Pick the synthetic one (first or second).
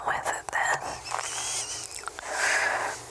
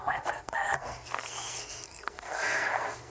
second